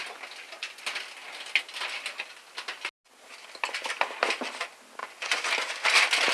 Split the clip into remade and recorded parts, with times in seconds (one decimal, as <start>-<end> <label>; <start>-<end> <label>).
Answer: 0.0-5.0 recorded; 5.0-5.5 remade; 5.5-6.3 recorded

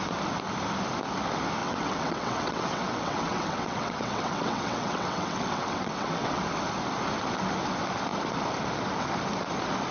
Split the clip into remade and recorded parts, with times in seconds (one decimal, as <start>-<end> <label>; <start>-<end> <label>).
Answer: 0.0-1.6 recorded; 1.6-6.4 remade; 6.4-9.9 recorded

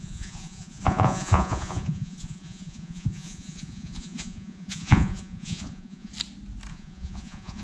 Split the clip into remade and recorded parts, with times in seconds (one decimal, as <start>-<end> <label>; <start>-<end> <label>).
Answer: 0.0-6.1 remade; 6.1-6.7 recorded; 6.7-7.6 remade

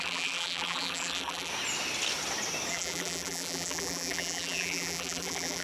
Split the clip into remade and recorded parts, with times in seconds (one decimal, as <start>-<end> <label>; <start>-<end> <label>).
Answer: 0.0-1.5 remade; 1.5-2.7 recorded; 2.7-5.6 remade